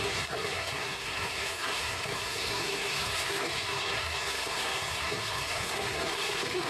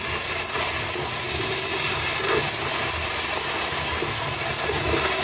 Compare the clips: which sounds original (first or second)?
second